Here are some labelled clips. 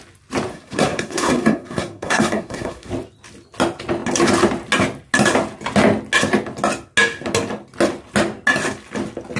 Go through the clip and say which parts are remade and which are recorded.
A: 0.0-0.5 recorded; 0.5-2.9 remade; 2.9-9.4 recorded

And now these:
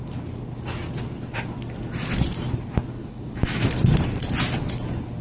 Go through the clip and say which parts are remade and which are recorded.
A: 0.0-3.0 recorded; 3.0-3.7 remade; 3.7-5.2 recorded

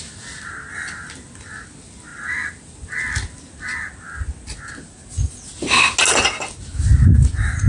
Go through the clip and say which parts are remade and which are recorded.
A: 0.0-7.7 recorded

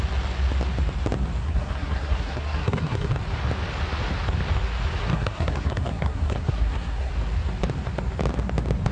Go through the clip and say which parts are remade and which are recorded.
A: 0.0-1.4 recorded; 1.4-3.1 remade; 3.1-5.0 recorded; 5.0-7.1 remade; 7.1-8.9 recorded

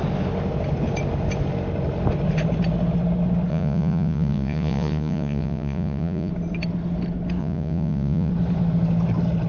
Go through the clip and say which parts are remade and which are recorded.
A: 0.0-3.5 recorded; 3.5-6.3 remade; 6.3-7.4 recorded; 7.4-8.3 remade; 8.3-9.5 recorded

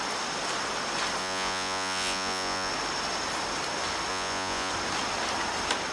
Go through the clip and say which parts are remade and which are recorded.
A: 0.0-1.2 recorded; 1.2-2.7 remade; 2.7-4.1 recorded; 4.1-4.7 remade; 4.7-5.9 recorded

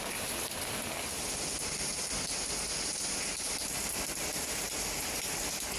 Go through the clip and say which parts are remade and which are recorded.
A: 0.0-5.8 recorded